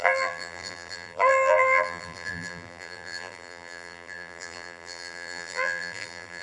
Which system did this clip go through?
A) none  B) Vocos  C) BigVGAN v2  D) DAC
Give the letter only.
C